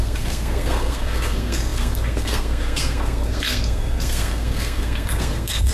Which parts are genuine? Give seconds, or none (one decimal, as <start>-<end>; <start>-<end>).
none